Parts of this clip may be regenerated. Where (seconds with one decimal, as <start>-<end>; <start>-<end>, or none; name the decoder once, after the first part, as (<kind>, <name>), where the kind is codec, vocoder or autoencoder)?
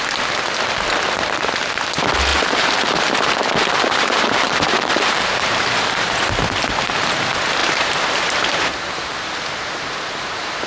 2.3-6.1 (vocoder, BigVGAN v2); 7.6-9.3